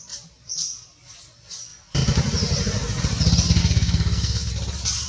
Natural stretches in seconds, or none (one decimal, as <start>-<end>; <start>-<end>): 0.0-3.6; 4.5-5.1